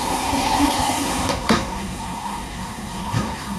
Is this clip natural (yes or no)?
no